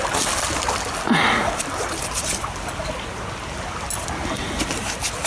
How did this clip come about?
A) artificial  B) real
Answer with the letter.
B